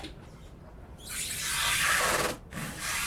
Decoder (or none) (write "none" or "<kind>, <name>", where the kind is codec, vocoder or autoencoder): none